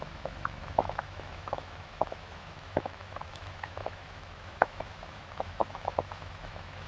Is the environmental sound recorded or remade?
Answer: remade